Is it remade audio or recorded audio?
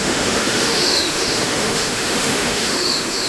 remade